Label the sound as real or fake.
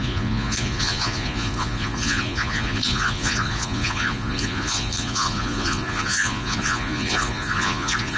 fake